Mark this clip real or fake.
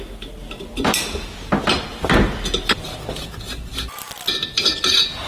real